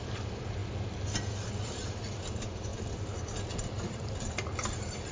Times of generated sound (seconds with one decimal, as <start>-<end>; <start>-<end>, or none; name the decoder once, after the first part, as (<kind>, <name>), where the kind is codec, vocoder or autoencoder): 0.0-0.6 (vocoder, BigVGAN v2); 1.2-2.7; 3.4-5.1